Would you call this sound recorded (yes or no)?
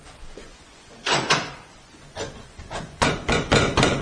no